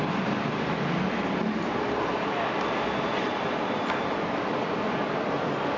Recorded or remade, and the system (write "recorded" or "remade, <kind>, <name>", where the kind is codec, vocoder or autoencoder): recorded